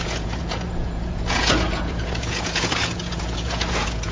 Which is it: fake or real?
fake